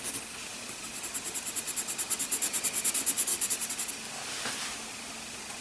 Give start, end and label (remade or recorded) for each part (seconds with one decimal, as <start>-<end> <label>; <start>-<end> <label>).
0.0-5.6 recorded

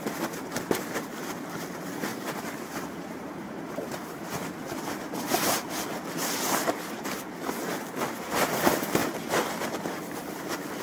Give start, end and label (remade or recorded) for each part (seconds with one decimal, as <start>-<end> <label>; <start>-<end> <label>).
0.0-2.1 recorded; 2.1-4.5 remade; 4.5-10.8 recorded

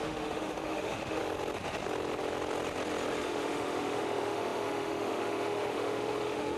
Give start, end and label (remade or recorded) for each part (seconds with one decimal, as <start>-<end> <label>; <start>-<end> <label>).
0.0-1.2 remade; 1.2-3.2 recorded; 3.2-6.6 remade

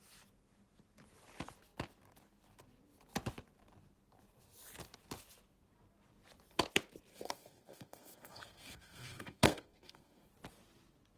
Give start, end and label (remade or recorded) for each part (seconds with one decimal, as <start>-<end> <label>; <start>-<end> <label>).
0.0-7.1 recorded; 7.1-10.3 remade; 10.3-11.2 recorded